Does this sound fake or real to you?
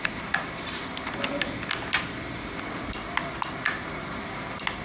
real